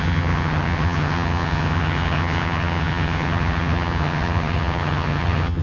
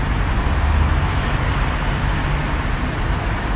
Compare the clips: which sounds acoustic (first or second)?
second